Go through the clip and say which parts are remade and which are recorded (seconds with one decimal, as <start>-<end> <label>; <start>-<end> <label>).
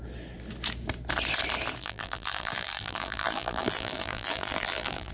0.0-1.8 recorded; 1.8-5.1 remade